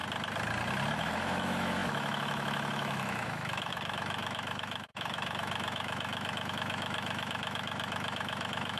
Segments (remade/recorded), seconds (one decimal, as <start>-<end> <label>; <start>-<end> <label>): 0.0-0.9 recorded; 0.9-8.8 remade